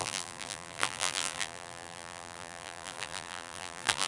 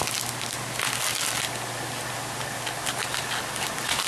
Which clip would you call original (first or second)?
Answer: second